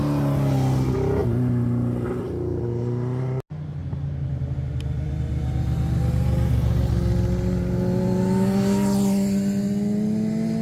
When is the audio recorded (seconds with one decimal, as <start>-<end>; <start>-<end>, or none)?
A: 0.0-10.6